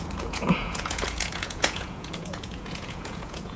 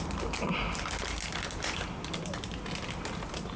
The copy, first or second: first